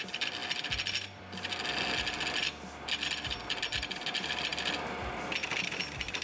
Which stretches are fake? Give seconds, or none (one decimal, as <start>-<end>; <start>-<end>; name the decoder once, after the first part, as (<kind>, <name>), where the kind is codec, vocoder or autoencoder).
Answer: none

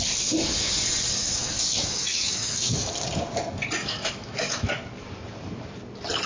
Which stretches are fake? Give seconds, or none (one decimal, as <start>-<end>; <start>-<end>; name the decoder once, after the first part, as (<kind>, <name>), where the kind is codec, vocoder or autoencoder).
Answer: 1.8-2.9 (autoencoder, DAC-VAE); 3.8-4.7

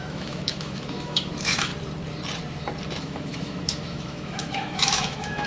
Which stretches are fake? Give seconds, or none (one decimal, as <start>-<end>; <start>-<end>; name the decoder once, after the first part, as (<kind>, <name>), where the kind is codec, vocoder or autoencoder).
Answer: 0.0-1.7 (autoencoder, DAC-VAE); 3.0-5.5

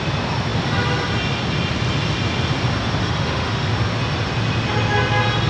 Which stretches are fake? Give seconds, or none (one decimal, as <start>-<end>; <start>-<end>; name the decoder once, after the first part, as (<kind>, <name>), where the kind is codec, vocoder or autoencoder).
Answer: 3.0-3.7 (autoencoder, DAC-VAE)

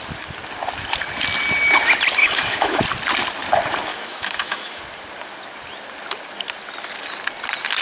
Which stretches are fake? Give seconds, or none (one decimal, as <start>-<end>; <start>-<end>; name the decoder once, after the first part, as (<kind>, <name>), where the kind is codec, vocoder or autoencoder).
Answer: 2.2-2.8 (autoencoder, DAC-VAE); 3.9-4.8

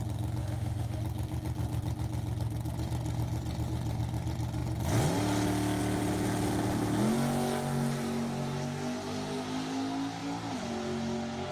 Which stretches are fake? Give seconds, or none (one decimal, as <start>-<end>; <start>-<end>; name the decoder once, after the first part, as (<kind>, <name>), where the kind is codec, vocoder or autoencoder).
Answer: 0.4-1.0 (autoencoder, DAC-VAE)

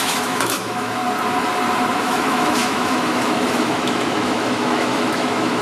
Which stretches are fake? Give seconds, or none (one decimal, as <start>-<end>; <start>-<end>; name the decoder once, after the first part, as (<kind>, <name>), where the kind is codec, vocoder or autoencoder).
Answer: 0.0-1.0 (autoencoder, DAC-VAE); 2.0-5.6